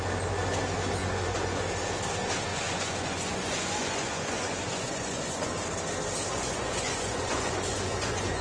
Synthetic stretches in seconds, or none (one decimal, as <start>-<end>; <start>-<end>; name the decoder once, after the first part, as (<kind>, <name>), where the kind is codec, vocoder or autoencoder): 1.0-1.6 (vocoder, Vocos); 2.5-5.5; 6.3-8.4